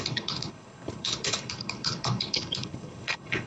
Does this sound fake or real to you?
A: fake